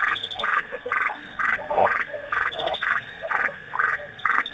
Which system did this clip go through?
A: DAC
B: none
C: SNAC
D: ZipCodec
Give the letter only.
C